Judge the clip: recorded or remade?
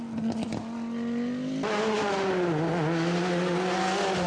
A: recorded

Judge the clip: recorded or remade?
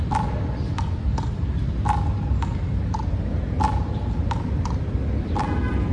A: recorded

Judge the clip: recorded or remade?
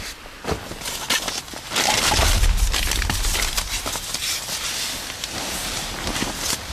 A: recorded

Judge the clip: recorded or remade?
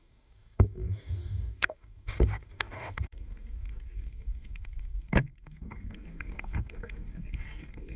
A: remade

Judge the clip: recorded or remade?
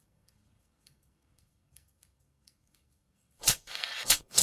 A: remade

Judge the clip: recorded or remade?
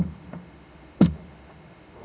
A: remade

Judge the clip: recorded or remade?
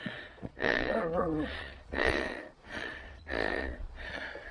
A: remade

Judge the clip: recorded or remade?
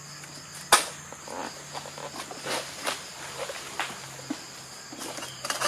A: recorded